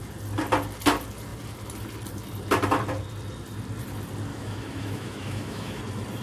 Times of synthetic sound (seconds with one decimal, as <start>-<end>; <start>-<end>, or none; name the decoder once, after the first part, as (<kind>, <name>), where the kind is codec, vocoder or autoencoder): 4.3-5.8 (autoencoder, DAC-VAE)